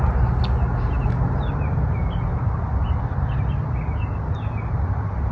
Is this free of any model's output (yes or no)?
yes